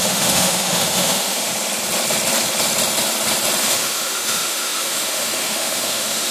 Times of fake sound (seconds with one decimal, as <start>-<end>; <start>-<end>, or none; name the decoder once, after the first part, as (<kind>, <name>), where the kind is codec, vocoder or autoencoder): 0.0-1.5 (autoencoder, DAC-VAE); 3.6-6.3